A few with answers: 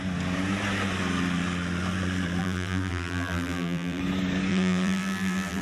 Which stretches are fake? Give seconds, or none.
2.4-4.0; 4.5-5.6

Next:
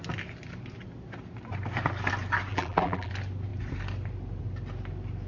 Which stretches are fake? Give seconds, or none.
2.5-3.1

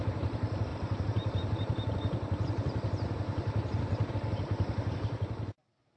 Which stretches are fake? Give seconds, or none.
0.7-4.1

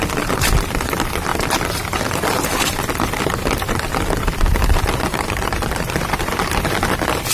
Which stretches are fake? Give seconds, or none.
5.1-6.3

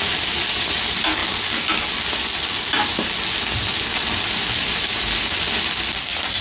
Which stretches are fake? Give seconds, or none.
none

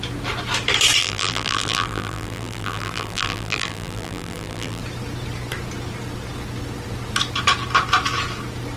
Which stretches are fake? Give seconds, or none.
1.0-4.8

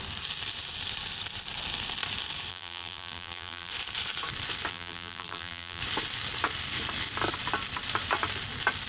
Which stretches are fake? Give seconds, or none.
2.5-3.7; 4.7-5.8

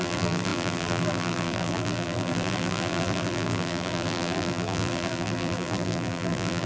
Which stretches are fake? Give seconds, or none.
0.0-6.7